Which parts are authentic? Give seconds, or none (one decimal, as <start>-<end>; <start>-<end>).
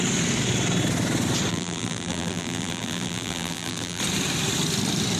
0.0-1.5; 4.0-5.2